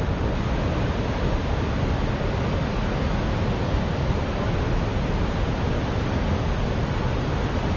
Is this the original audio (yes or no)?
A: yes